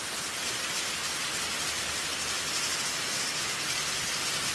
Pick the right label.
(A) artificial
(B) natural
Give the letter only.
B